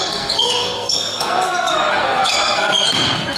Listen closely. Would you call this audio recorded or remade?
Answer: remade